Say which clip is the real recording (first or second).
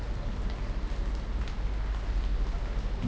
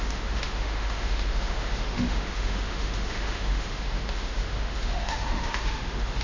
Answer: first